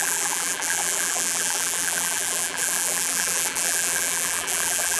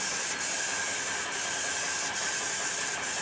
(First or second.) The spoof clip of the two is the first